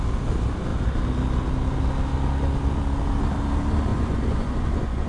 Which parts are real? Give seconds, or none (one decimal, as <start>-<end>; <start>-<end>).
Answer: 0.0-3.9